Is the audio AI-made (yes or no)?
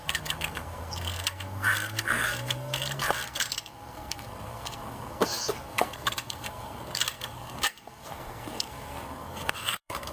yes